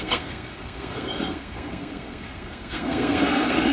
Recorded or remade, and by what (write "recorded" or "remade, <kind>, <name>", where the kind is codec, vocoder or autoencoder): remade, codec, SNAC